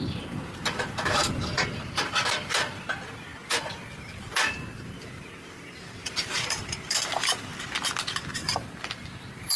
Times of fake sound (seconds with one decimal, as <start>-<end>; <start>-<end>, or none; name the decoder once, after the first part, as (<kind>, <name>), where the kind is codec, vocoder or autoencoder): 0.0-7.5 (vocoder, BigVGAN v2); 8.3-9.6